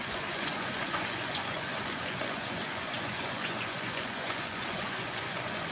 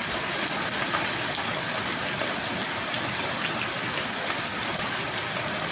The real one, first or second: second